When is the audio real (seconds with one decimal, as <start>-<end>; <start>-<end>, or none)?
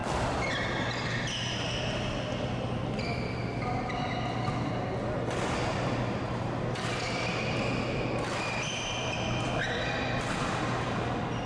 0.0-11.5